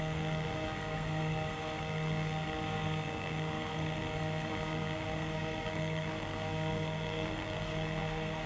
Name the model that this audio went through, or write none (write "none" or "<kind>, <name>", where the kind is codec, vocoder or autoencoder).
codec, SNAC